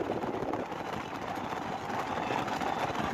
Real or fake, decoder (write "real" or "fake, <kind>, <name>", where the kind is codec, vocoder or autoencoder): real